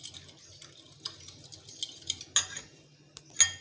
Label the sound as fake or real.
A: real